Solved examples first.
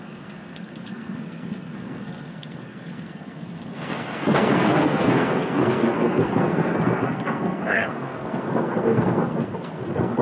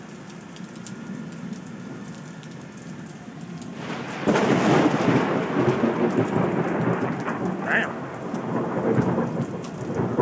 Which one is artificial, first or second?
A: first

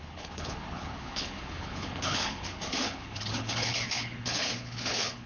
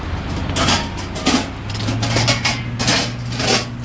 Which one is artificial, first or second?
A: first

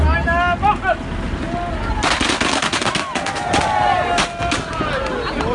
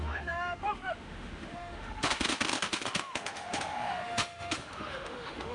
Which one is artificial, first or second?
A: second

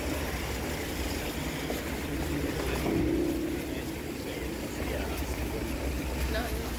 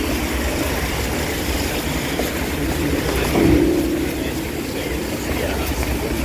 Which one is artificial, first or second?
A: second